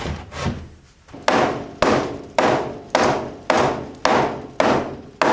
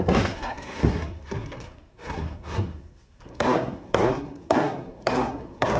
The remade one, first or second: second